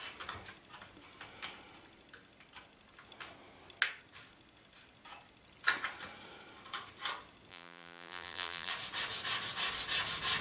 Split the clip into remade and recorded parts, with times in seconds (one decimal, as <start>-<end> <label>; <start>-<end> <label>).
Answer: 0.0-7.5 recorded; 7.5-8.7 remade; 8.7-10.4 recorded